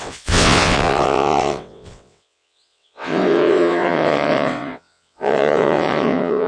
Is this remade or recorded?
remade